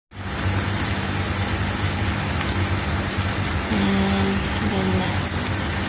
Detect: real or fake real